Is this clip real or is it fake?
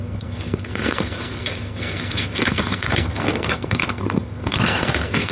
fake